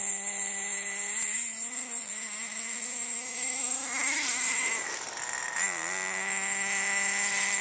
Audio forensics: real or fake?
real